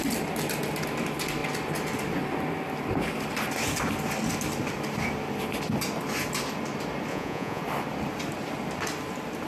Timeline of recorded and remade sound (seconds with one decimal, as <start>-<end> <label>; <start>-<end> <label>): 0.0-7.1 recorded; 7.1-7.6 remade; 7.6-9.5 recorded